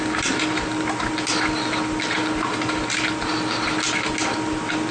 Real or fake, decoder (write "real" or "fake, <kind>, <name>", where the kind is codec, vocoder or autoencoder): real